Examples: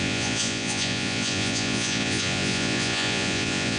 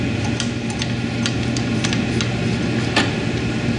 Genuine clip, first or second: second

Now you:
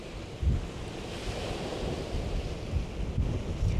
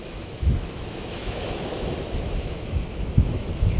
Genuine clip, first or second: first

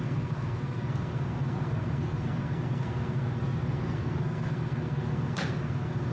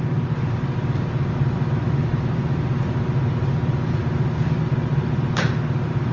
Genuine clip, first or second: second